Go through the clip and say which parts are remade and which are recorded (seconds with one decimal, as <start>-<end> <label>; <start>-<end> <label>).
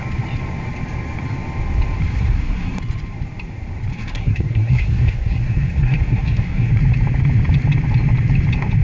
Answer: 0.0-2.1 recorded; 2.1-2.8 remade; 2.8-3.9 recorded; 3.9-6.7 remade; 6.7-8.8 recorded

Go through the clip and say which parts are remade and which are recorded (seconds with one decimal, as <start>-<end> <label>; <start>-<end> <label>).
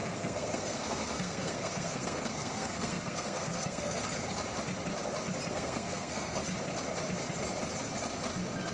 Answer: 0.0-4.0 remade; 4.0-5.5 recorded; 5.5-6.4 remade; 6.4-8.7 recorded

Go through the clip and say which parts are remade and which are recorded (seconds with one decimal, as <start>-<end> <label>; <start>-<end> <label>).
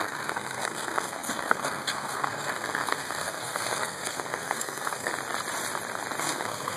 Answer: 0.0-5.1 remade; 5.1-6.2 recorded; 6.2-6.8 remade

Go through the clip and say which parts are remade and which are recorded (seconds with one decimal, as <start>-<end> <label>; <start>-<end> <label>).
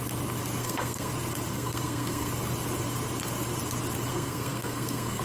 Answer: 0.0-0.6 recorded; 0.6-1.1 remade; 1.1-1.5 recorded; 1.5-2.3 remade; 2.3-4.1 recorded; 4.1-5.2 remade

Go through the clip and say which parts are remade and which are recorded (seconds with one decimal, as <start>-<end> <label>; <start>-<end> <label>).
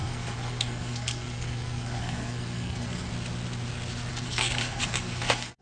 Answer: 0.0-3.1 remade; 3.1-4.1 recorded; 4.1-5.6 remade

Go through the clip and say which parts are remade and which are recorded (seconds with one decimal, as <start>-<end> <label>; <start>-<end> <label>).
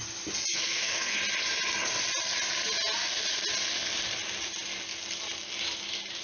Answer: 0.0-0.5 recorded; 0.5-1.2 remade; 1.2-6.2 recorded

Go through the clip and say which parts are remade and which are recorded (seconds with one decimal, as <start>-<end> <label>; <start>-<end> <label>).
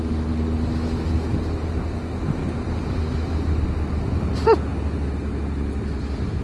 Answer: 0.0-6.4 recorded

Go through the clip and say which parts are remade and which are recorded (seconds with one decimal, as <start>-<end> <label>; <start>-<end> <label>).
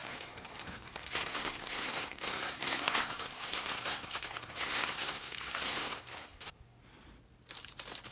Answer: 0.0-6.8 remade; 6.8-8.1 recorded